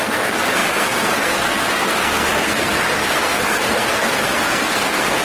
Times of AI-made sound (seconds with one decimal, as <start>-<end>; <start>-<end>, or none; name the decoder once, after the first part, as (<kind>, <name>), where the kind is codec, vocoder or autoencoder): 0.0-5.2 (codec, SNAC)